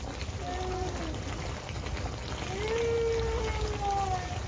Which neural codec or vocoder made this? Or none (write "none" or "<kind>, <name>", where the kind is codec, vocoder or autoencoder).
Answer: none